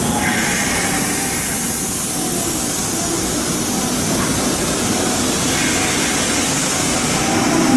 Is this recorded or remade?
recorded